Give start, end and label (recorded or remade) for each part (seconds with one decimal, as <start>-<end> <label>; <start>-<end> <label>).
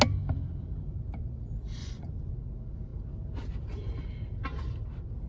0.0-1.8 recorded; 1.8-2.3 remade; 2.3-5.3 recorded